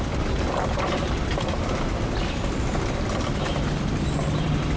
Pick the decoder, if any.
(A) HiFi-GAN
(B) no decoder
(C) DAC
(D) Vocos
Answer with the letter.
B